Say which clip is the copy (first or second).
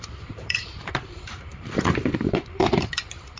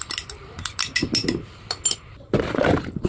first